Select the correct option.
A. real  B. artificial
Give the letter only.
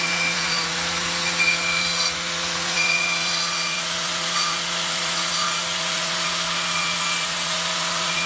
B